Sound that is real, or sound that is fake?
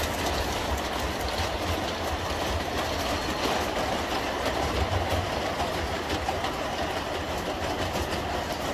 real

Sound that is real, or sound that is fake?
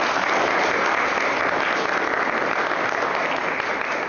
real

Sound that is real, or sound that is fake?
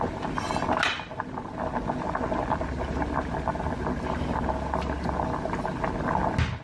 real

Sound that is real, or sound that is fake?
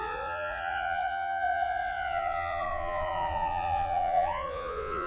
fake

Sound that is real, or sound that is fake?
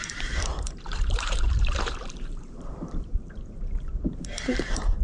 fake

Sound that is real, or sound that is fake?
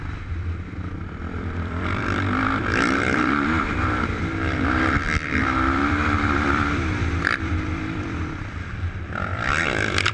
fake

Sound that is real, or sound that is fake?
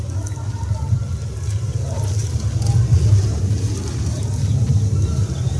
real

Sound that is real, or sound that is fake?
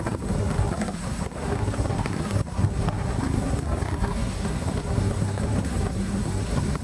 fake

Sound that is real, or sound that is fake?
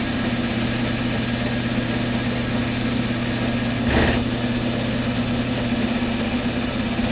real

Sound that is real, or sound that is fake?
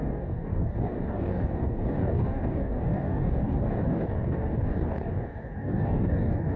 fake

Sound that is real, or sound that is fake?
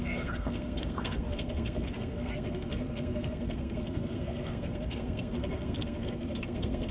fake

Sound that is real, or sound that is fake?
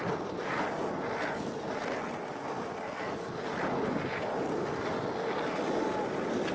real